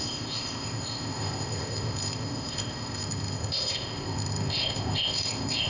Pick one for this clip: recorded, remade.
remade